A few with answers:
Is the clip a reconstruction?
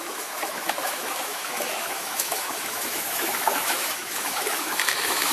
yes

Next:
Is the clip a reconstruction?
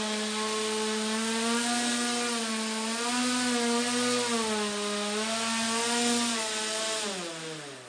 no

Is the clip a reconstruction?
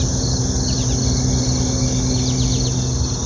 no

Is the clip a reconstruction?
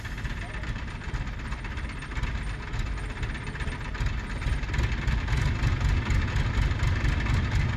no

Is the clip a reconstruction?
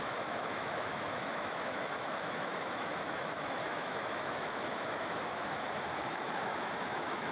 yes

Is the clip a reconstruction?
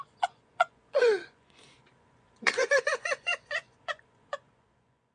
yes